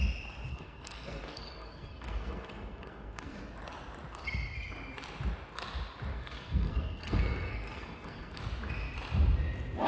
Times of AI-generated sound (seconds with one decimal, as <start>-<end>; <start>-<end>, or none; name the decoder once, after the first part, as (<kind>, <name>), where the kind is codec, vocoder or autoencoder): 0.5-3.4 (codec, SNAC); 6.1-8.4

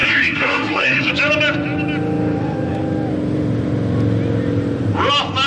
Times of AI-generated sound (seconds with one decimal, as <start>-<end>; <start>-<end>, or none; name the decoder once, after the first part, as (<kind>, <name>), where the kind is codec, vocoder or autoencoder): 0.0-1.1 (codec, SNAC)

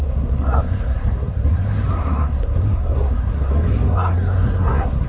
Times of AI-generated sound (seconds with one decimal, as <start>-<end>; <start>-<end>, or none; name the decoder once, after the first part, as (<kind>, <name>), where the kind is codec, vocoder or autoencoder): 0.0-5.1 (codec, SNAC)

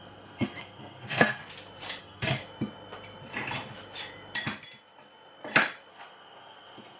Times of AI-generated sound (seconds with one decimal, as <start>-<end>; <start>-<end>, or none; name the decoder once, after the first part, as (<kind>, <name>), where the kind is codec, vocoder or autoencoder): 0.0-1.4 (codec, SNAC); 2.0-2.4; 5.9-7.0